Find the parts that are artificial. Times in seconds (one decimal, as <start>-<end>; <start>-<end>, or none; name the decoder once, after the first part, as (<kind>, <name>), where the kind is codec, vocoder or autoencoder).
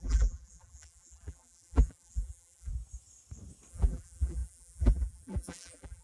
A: 0.0-2.7 (vocoder, BigVGAN v2); 3.7-6.0